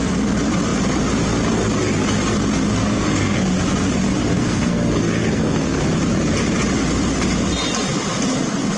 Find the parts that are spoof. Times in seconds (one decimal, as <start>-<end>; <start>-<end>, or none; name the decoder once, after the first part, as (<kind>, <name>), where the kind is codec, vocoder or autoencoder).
2.8-3.4 (codec, SNAC); 4.2-5.8